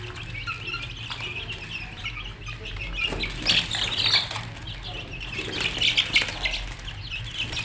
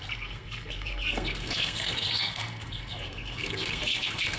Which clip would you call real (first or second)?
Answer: first